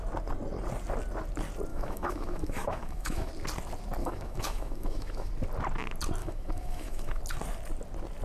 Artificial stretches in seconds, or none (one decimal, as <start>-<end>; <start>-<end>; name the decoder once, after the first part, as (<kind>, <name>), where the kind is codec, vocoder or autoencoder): 1.7-3.3 (autoencoder, DAC-VAE); 4.0-5.3; 6.2-7.2